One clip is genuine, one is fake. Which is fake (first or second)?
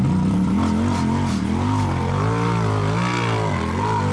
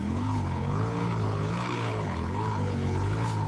second